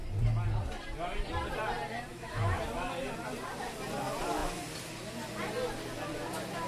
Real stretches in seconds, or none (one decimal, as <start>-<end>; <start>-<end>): 0.0-2.1; 2.6-6.7